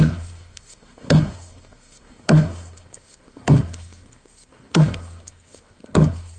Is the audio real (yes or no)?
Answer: no